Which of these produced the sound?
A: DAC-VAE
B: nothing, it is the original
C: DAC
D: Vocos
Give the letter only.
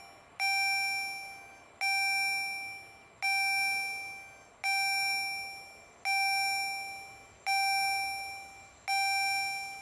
B